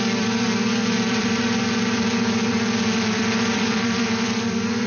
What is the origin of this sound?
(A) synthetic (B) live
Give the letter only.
A